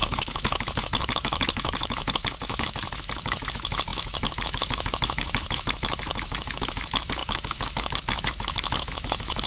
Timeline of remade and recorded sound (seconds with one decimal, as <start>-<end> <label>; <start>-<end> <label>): 0.0-9.5 remade